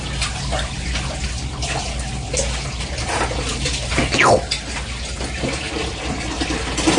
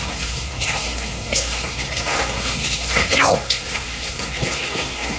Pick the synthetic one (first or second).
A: second